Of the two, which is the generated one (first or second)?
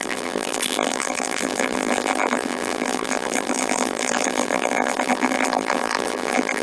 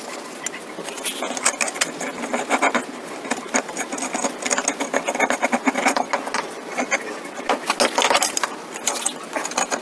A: first